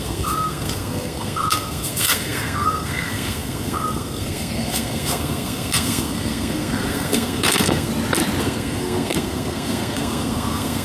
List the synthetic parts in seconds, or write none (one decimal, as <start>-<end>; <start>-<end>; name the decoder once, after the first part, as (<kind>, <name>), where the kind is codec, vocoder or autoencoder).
0.0-7.9 (codec, SNAC); 8.4-10.8